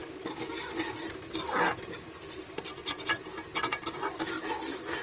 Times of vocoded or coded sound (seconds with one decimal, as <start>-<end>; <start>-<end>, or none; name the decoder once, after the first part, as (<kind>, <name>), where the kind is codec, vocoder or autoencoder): none